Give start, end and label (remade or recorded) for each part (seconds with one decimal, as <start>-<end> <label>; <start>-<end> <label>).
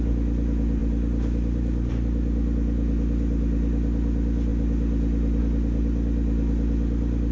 0.0-0.8 recorded; 0.8-1.9 remade; 1.9-7.3 recorded